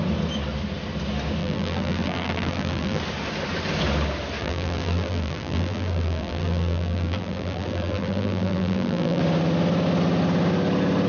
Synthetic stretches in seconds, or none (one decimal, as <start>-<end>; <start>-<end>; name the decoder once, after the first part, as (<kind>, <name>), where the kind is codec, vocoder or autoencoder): 1.4-3.0 (vocoder, BigVGAN v2); 4.4-9.2

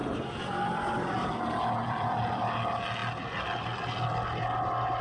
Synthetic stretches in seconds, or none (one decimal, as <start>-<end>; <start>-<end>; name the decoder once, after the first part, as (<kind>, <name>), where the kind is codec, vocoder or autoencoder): 0.0-1.4 (vocoder, BigVGAN v2); 1.8-2.4

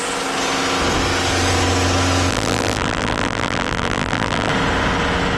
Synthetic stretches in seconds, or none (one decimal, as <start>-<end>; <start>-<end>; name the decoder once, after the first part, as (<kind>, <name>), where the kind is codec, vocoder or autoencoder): 2.3-4.5 (vocoder, BigVGAN v2)

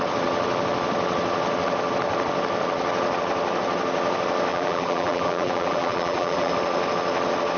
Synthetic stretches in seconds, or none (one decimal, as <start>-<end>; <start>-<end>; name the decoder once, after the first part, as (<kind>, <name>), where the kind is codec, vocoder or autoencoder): 4.5-6.5 (vocoder, BigVGAN v2)